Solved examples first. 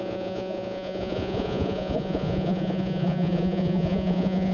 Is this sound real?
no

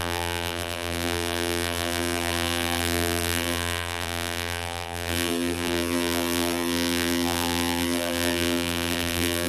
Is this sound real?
no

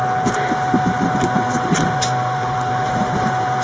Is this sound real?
yes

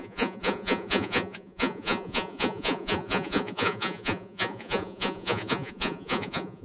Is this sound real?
no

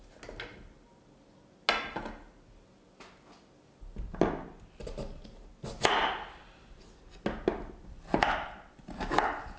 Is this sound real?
yes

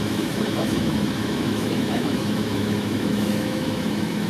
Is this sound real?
no